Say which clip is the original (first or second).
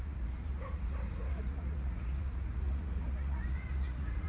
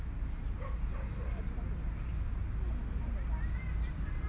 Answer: second